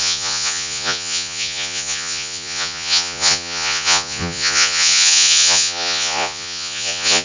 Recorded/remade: remade